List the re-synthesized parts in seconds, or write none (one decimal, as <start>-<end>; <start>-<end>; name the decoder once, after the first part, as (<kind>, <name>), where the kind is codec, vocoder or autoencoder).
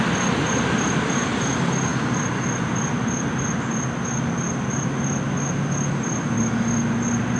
none